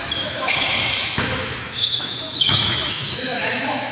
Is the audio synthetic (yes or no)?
yes